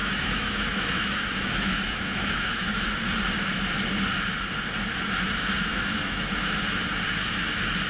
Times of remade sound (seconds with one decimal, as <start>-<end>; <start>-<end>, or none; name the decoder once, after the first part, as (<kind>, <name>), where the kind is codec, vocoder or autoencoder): 0.0-2.8 (autoencoder, DAC-VAE); 5.7-6.8